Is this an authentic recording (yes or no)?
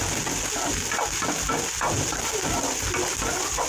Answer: yes